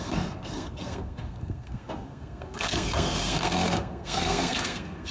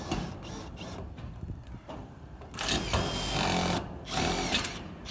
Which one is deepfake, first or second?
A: first